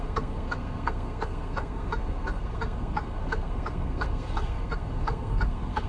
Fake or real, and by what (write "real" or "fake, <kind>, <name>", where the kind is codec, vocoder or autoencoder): fake, codec, SNAC